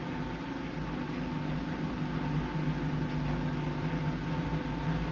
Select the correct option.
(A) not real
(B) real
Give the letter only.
B